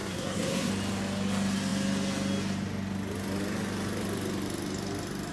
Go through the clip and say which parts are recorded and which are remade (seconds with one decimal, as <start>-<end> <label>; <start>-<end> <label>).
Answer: 0.0-0.7 remade; 0.7-5.3 recorded